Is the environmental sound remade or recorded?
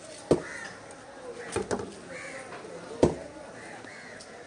recorded